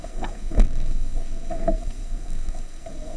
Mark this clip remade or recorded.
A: remade